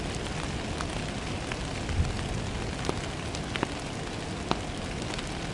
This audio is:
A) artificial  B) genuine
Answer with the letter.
B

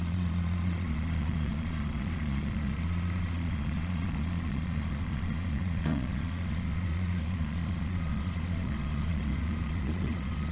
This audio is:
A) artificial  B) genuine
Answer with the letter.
A